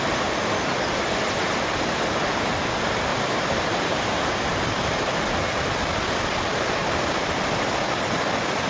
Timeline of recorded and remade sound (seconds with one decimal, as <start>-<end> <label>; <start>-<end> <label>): 0.0-3.1 recorded; 3.1-5.2 remade; 5.2-6.8 recorded; 6.8-7.7 remade; 7.7-8.7 recorded